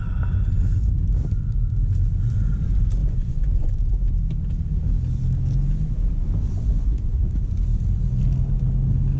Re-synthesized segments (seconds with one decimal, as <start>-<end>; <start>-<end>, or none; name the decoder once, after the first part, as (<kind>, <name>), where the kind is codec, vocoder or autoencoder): 3.0-3.8 (vocoder, Vocos); 6.7-7.3